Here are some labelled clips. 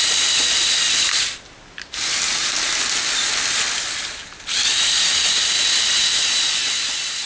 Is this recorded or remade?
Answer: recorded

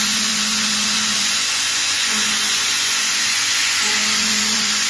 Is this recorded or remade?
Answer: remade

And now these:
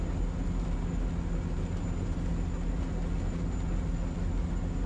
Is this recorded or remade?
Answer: recorded